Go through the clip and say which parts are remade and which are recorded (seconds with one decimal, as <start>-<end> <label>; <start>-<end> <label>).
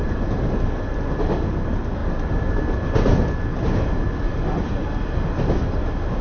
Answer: 0.0-6.2 recorded